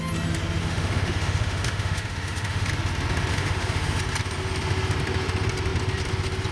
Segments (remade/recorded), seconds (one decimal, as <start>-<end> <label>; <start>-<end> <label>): 0.0-0.6 recorded; 0.6-2.7 remade; 2.7-3.3 recorded; 3.3-4.0 remade; 4.0-6.5 recorded